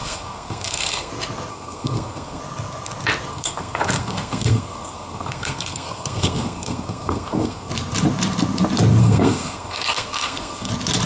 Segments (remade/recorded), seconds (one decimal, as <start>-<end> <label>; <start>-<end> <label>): 0.0-1.1 remade; 1.1-1.5 recorded; 1.5-2.4 remade; 2.4-3.3 recorded; 3.3-7.7 remade; 7.7-9.0 recorded; 9.0-10.7 remade; 10.7-11.1 recorded